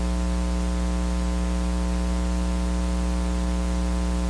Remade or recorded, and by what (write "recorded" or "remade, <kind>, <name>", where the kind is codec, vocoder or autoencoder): recorded